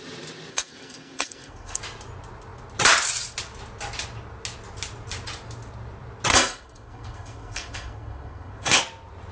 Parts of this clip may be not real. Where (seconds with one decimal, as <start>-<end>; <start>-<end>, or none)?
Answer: 0.5-1.8; 6.3-8.8